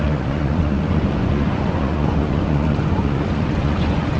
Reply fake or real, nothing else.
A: fake